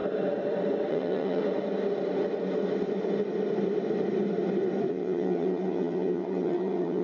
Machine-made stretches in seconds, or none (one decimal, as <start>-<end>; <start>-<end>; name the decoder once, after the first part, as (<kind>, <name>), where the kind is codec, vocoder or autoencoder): 0.9-1.4 (vocoder, HiFi-GAN); 4.9-7.0